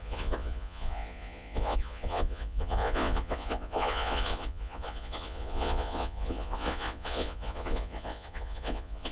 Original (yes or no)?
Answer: no